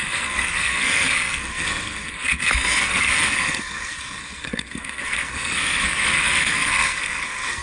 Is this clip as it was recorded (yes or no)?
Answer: no